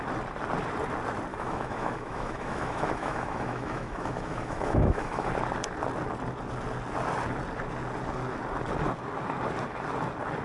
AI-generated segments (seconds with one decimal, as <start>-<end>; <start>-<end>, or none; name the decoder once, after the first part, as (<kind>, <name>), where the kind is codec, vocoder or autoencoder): 1.3-5.3 (autoencoder, DAC-VAE)